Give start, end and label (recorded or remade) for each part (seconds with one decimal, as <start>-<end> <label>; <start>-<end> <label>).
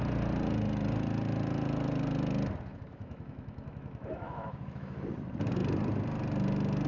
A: 0.0-2.7 recorded; 2.7-5.0 remade; 5.0-6.9 recorded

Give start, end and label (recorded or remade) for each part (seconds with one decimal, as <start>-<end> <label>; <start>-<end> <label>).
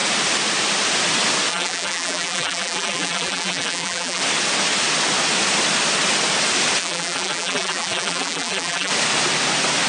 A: 0.0-1.5 recorded; 1.5-4.2 remade; 4.2-6.8 recorded; 6.8-8.9 remade; 8.9-9.9 recorded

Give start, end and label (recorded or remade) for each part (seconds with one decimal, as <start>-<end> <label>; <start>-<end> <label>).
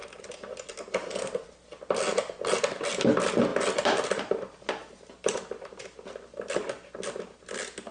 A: 0.0-1.7 remade; 1.7-2.1 recorded; 2.1-2.9 remade; 2.9-3.5 recorded; 3.5-4.1 remade; 4.1-7.9 recorded